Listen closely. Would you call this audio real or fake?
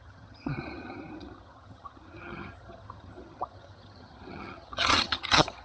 fake